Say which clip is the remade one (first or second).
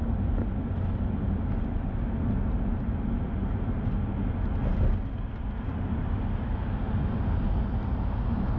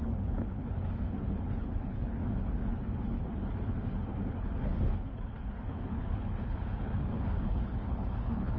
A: second